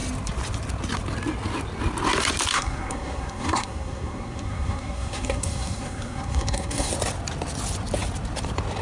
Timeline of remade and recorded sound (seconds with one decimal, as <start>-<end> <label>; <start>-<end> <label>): 0.0-2.5 recorded; 2.5-6.9 remade; 6.9-8.8 recorded